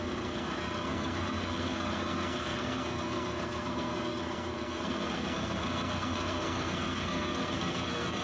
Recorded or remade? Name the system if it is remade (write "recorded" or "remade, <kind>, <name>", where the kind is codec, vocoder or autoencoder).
remade, codec, SNAC